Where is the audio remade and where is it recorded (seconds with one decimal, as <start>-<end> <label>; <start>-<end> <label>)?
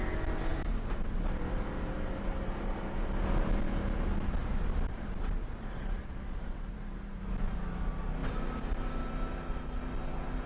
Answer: 0.0-10.5 recorded